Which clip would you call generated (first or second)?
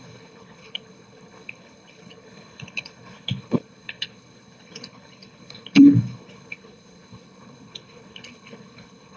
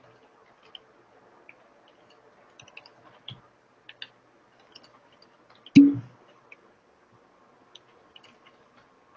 first